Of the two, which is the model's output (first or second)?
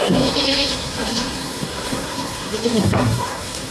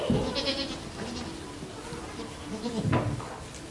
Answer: first